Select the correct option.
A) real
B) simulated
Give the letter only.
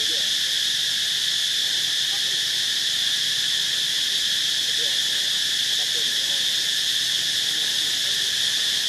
A